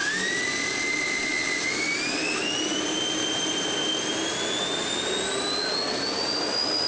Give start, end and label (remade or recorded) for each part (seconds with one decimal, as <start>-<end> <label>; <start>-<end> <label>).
0.0-6.9 recorded

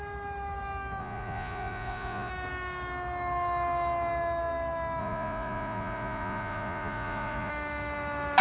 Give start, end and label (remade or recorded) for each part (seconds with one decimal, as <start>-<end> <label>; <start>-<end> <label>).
0.0-1.0 recorded; 1.0-2.3 remade; 2.3-5.0 recorded; 5.0-7.5 remade; 7.5-8.4 recorded

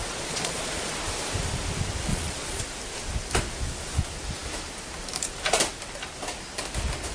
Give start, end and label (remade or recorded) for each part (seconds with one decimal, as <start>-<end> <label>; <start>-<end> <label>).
0.0-0.9 remade; 0.9-2.1 recorded; 2.1-2.6 remade; 2.6-7.1 recorded

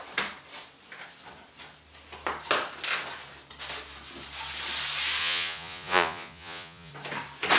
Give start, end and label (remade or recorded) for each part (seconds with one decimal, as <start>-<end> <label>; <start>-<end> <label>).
0.0-5.2 recorded; 5.2-6.9 remade; 6.9-7.6 recorded

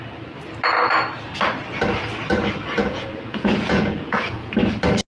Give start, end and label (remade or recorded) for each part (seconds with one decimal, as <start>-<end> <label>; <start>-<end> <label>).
0.0-2.8 recorded; 2.8-4.5 remade; 4.5-5.1 recorded